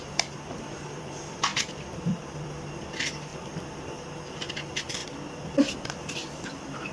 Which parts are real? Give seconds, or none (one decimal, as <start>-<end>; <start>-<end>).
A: 5.0-5.8